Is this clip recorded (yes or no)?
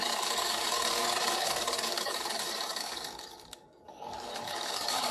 no